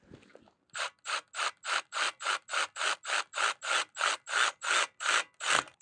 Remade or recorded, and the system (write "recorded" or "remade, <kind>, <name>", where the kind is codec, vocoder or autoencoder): recorded